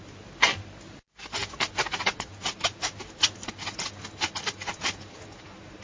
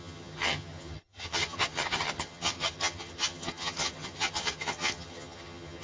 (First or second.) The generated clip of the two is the second